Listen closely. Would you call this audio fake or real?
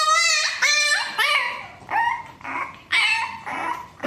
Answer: real